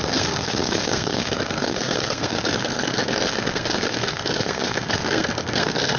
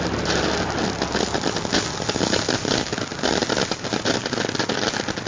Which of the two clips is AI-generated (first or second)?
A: first